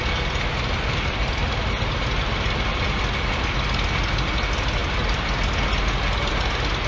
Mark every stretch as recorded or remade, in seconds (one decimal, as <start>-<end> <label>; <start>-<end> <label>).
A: 0.0-6.9 recorded